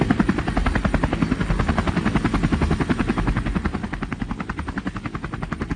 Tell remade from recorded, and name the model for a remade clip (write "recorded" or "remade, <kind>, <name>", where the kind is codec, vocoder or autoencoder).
recorded